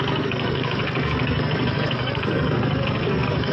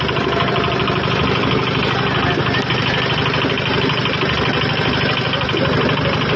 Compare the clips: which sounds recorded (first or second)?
second